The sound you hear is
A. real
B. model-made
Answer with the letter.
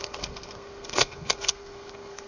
B